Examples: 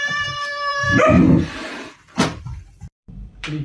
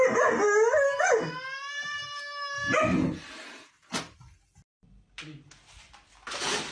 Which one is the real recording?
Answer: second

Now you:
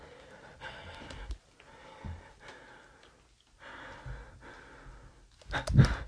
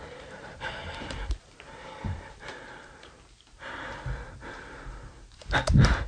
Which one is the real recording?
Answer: first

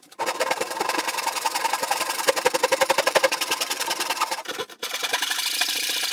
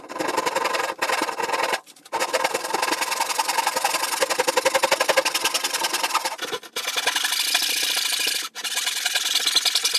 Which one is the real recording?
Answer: second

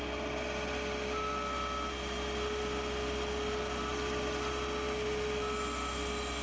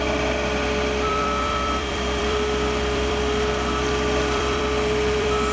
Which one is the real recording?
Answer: first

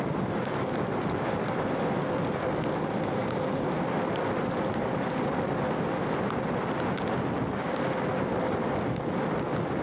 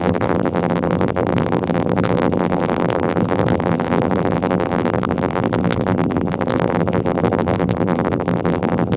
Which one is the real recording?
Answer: first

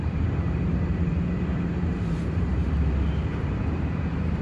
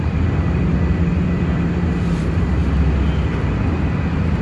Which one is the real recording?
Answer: second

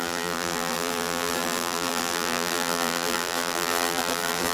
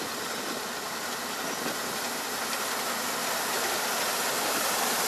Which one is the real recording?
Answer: second